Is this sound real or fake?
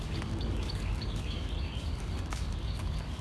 fake